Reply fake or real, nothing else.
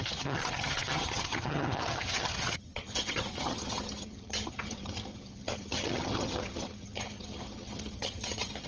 fake